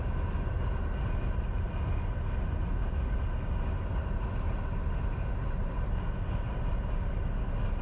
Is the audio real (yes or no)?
yes